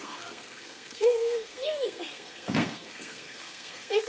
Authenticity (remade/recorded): remade